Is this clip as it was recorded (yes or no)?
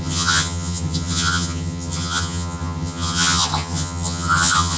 no